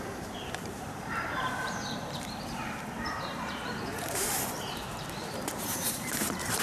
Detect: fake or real fake